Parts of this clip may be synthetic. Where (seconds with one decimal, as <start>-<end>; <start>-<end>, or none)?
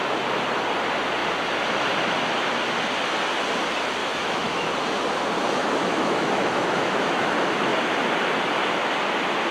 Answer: 4.0-4.7; 5.6-7.3